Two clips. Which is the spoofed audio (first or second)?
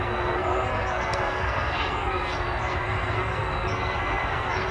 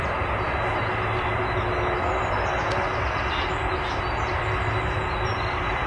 first